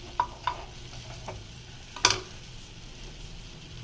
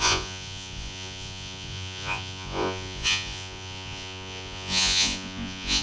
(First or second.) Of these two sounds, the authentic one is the first